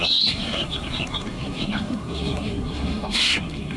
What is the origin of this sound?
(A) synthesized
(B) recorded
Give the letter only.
A